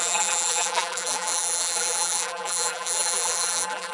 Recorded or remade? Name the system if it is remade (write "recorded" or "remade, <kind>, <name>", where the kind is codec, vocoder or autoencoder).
remade, vocoder, BigVGAN v2